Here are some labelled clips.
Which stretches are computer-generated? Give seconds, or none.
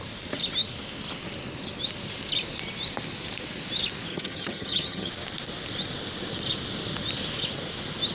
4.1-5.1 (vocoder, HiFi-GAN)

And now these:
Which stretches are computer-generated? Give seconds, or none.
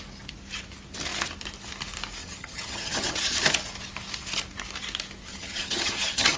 2.2-3.2 (vocoder, HiFi-GAN); 5.3-6.4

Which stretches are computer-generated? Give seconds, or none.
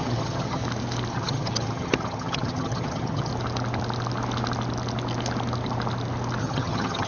0.0-0.6 (vocoder, HiFi-GAN); 1.1-3.3; 6.4-7.1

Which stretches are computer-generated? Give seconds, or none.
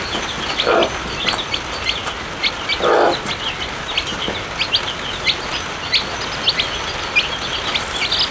none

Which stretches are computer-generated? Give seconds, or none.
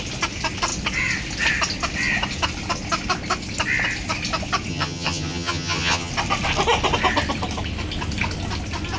4.7-6.1 (vocoder, HiFi-GAN)